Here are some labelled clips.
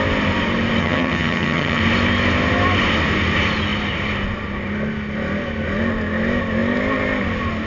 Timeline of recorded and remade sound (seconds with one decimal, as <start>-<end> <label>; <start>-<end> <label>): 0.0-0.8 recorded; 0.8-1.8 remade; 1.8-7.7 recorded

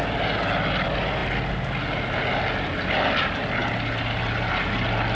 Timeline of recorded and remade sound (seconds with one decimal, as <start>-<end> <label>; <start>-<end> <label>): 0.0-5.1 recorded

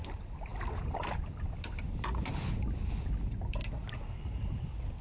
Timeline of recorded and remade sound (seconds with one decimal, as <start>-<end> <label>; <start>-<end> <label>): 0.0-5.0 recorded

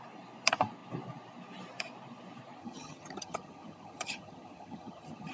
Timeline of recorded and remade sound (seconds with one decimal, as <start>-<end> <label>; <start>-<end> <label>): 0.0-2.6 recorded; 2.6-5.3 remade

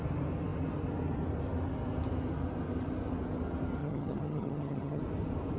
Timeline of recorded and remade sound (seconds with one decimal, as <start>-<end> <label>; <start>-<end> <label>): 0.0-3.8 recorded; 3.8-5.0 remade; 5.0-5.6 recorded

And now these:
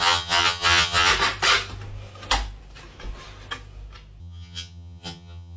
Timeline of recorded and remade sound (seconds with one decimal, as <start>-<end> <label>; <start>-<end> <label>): 0.0-1.1 remade; 1.1-4.2 recorded; 4.2-5.6 remade

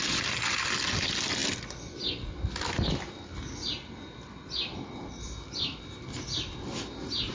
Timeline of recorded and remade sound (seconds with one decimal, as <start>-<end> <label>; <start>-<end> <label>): 0.0-7.3 recorded